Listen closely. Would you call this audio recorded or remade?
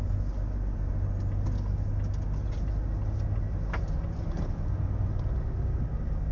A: recorded